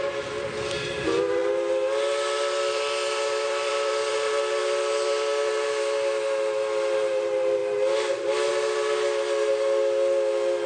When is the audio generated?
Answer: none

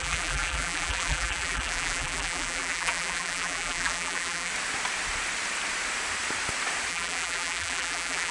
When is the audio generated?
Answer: 0.0-4.5; 6.9-8.3

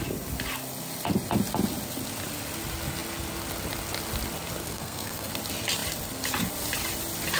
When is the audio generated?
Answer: 4.6-5.3